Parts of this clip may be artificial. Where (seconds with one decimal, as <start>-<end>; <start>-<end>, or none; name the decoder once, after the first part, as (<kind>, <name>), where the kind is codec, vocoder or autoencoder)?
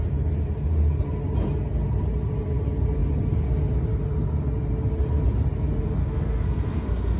6.0-7.2 (codec, SNAC)